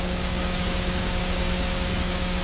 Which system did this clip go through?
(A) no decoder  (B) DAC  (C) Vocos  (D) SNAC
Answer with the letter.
B